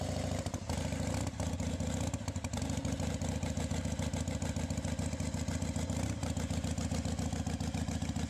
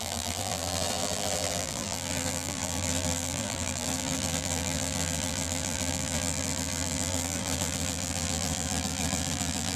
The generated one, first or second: second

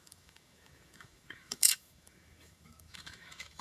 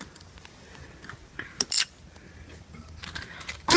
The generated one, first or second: first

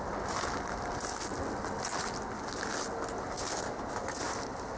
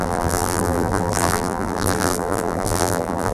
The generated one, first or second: second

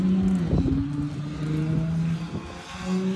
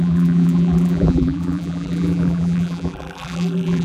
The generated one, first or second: second